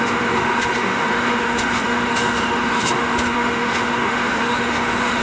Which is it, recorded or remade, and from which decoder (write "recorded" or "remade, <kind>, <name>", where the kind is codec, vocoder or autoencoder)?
remade, autoencoder, DAC-VAE